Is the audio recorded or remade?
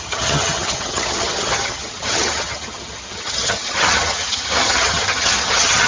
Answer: remade